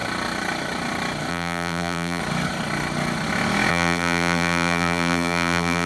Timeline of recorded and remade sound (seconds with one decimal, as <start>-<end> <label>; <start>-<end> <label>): 0.0-1.3 recorded; 1.3-2.2 remade; 2.2-3.7 recorded; 3.7-5.9 remade